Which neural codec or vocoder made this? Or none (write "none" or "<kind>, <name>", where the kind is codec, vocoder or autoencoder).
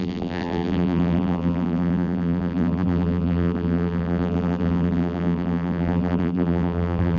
vocoder, BigVGAN v2